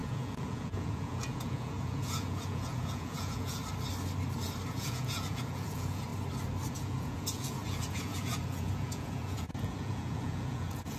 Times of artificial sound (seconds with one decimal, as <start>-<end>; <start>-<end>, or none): 0.0-3.6; 4.7-6.1; 6.7-11.0